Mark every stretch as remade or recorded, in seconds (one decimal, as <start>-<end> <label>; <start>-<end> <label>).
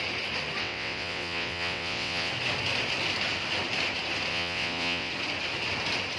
0.0-0.6 recorded; 0.6-2.3 remade; 2.3-4.3 recorded; 4.3-5.1 remade; 5.1-6.2 recorded